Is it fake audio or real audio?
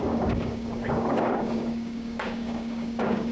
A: fake